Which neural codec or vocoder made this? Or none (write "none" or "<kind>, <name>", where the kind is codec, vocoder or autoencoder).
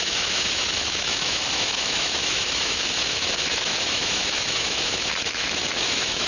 autoencoder, DAC-VAE